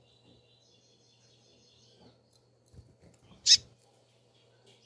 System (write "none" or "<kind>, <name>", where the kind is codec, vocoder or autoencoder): none